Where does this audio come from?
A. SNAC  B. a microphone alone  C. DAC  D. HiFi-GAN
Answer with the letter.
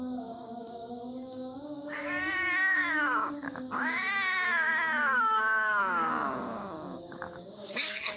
C